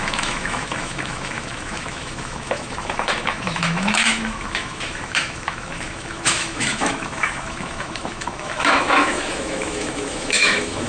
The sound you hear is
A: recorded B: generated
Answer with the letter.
B